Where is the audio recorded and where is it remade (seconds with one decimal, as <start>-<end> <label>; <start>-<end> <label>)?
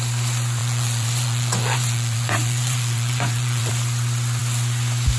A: 0.0-0.6 recorded; 0.6-3.7 remade; 3.7-5.2 recorded